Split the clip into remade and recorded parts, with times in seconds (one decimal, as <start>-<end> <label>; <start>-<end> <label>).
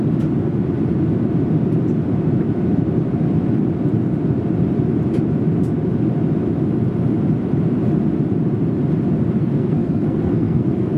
0.0-9.4 recorded; 9.4-11.0 remade